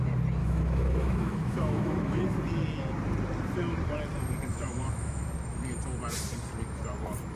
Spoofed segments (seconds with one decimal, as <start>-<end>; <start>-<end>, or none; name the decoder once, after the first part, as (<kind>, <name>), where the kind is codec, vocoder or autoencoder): 0.4-2.2 (autoencoder, DAC-VAE); 4.5-5.2

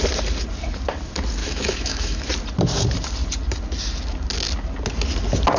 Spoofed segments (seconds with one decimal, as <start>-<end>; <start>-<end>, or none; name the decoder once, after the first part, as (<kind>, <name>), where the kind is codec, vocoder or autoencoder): 1.4-2.3 (autoencoder, DAC-VAE)

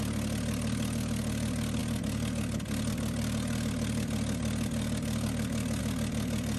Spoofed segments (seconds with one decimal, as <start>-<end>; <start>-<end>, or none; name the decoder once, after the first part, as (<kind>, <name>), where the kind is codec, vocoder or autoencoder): none

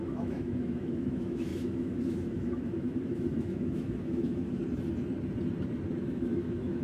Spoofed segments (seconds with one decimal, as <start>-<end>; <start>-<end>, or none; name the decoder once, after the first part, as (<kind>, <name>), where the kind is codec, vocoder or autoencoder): 0.0-4.6 (autoencoder, DAC-VAE); 6.0-6.8

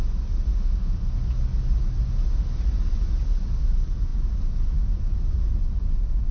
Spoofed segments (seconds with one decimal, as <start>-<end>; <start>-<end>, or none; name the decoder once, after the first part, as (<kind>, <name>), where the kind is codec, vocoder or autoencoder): 0.5-1.1 (autoencoder, DAC-VAE)